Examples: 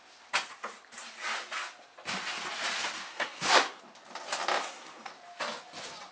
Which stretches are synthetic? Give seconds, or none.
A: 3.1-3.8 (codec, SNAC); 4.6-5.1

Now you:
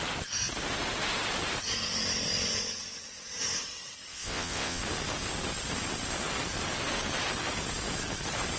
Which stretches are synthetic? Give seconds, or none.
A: 4.1-4.8 (vocoder, WaveNeXt)

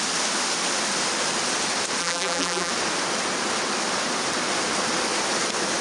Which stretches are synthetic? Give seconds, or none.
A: 2.0-2.7 (vocoder, BigVGAN v2)

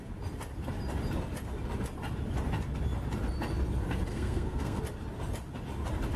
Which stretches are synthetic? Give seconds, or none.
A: 4.1-4.8 (codec, SNAC)

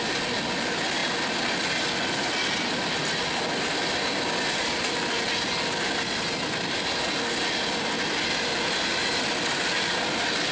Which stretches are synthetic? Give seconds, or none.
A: none